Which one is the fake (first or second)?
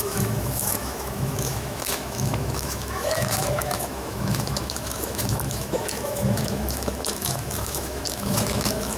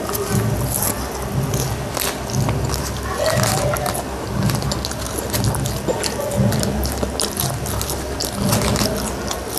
first